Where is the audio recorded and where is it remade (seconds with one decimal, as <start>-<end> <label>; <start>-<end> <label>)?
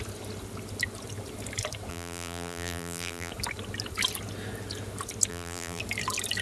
0.0-1.9 recorded; 1.9-3.3 remade; 3.3-5.3 recorded; 5.3-5.8 remade; 5.8-6.4 recorded